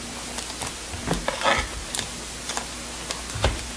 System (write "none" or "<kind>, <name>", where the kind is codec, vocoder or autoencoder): none